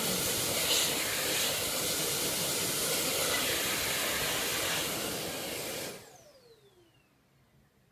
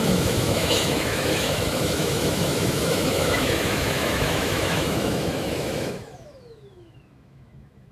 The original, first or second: first